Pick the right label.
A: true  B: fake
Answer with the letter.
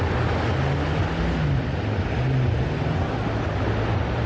A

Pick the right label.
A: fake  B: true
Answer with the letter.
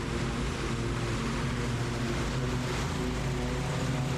B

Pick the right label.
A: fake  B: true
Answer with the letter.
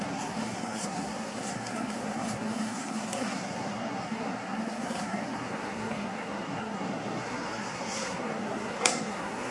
A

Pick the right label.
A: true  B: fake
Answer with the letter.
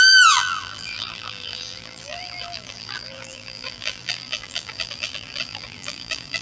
B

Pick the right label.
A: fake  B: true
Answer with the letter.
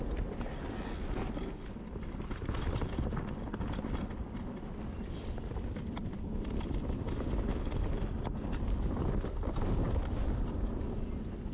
B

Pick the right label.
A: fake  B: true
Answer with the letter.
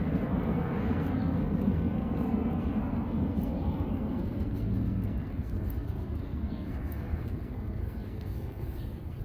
A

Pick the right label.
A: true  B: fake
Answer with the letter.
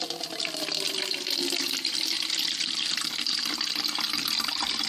B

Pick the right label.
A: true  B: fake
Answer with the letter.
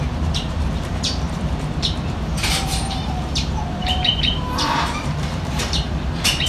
B